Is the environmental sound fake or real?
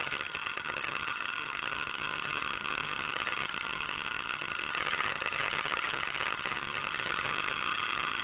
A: fake